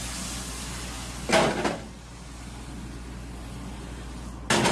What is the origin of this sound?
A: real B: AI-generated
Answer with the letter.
A